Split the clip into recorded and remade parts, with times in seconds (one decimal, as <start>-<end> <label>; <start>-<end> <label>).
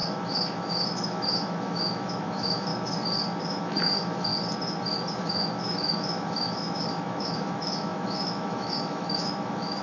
0.0-2.7 remade; 2.7-3.4 recorded; 3.4-4.3 remade; 4.3-5.2 recorded; 5.2-9.8 remade